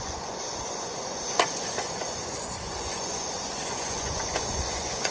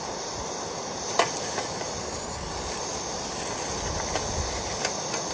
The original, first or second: second